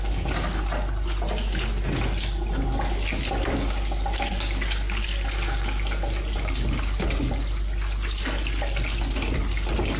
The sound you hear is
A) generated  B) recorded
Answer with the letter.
B